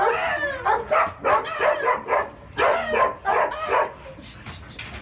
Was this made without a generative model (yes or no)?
yes